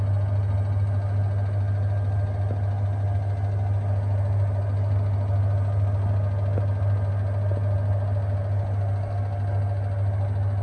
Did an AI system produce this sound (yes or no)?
no